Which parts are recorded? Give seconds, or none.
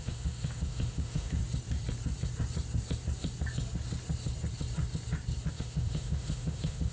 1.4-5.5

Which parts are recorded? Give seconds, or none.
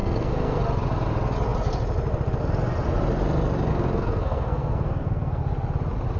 0.6-3.7; 5.4-6.2